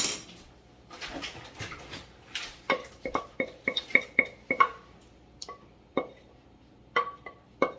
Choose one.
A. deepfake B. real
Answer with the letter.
A